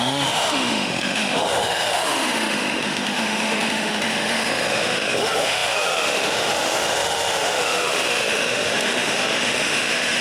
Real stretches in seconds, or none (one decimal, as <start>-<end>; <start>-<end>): none